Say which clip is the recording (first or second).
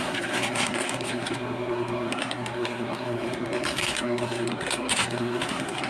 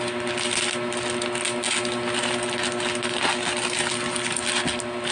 second